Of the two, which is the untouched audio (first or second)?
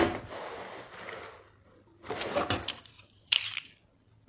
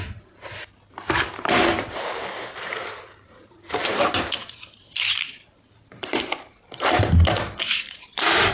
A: first